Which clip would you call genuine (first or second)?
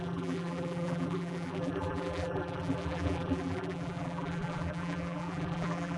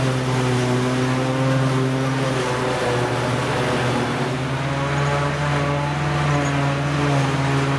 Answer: second